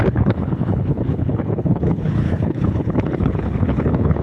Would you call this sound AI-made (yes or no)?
yes